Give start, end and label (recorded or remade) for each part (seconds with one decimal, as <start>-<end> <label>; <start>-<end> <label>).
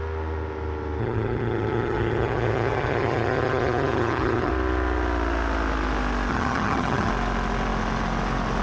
0.0-1.0 recorded; 1.0-4.5 remade; 4.5-6.3 recorded; 6.3-7.1 remade; 7.1-8.6 recorded